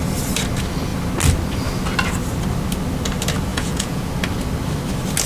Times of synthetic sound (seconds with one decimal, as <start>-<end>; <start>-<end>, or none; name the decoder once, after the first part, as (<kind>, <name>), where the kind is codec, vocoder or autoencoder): 3.5-4.1 (vocoder, Vocos)

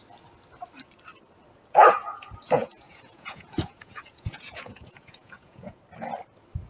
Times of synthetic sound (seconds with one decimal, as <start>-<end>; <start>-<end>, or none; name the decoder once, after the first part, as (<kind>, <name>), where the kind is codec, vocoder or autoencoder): 1.8-5.8 (vocoder, Vocos)

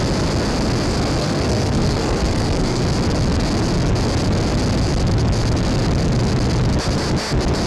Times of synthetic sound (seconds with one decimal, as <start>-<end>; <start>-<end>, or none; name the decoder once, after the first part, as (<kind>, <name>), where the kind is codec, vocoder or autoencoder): 1.2-2.8 (codec, SNAC)

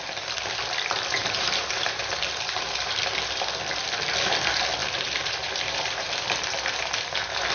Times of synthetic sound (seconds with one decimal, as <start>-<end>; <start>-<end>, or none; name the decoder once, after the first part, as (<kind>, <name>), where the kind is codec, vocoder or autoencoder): 1.2-3.0 (vocoder, BigVGAN v2); 4.8-6.1

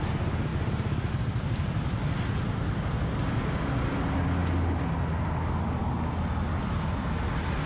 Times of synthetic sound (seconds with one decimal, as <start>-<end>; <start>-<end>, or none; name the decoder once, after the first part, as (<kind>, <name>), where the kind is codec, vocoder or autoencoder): none